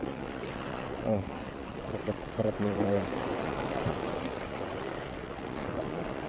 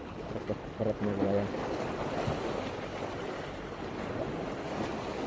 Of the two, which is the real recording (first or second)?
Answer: second